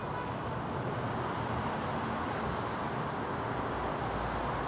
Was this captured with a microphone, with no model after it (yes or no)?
yes